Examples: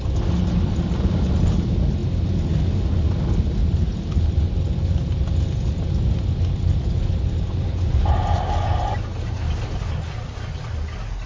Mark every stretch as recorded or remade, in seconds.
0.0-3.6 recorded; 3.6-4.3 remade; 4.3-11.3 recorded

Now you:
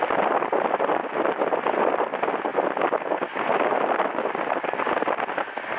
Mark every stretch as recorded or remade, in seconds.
0.0-1.0 recorded; 1.0-1.8 remade; 1.8-5.8 recorded

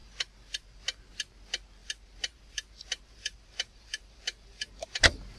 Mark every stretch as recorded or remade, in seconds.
0.0-1.8 recorded; 1.8-5.0 remade; 5.0-5.4 recorded